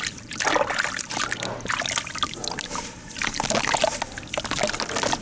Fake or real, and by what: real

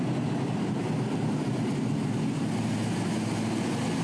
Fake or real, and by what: real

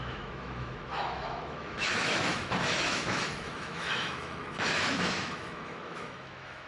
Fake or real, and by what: fake, autoencoder, DAC-VAE